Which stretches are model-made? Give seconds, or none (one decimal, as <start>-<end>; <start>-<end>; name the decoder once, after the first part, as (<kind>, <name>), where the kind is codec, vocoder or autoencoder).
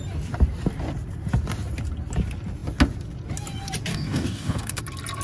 3.9-4.8 (codec, DAC)